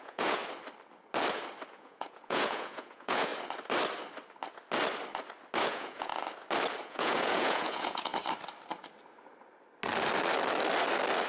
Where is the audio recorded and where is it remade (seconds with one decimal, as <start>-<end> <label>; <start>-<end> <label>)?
0.0-0.4 remade; 0.4-1.7 recorded; 1.7-3.3 remade; 3.3-5.6 recorded; 5.6-6.1 remade; 6.1-6.8 recorded; 6.8-8.1 remade; 8.1-11.3 recorded